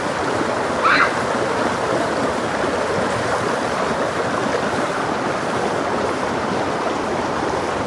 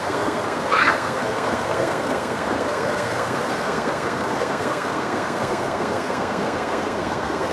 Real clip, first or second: first